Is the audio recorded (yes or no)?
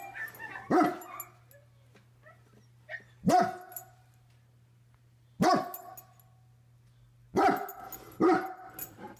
yes